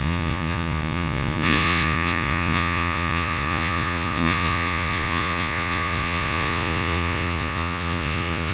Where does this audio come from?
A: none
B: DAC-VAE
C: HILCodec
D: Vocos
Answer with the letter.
D